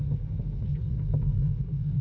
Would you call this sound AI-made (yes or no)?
yes